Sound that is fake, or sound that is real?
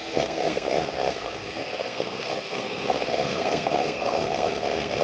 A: fake